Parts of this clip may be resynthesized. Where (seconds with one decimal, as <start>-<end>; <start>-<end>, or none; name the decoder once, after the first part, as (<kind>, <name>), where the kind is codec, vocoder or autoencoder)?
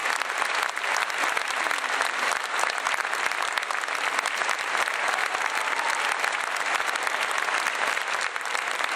none